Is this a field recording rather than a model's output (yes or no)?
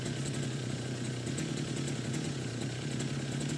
no